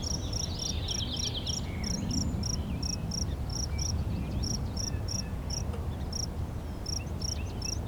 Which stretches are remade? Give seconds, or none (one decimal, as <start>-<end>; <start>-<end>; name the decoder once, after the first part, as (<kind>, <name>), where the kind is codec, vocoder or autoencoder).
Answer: 3.5-5.6 (vocoder, Vocos)